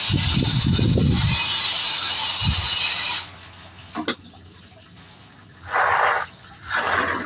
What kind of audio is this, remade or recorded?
recorded